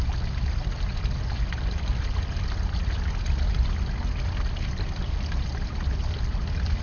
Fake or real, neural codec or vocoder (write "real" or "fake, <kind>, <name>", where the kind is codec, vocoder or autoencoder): real